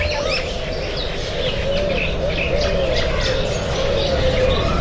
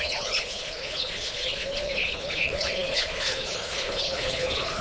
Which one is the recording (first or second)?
first